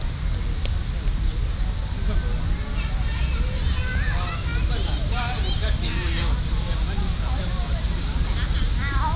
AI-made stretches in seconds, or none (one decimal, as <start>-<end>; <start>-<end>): none